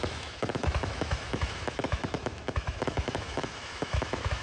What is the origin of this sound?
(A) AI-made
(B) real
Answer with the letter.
A